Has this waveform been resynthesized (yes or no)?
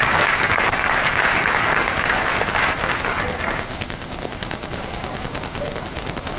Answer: yes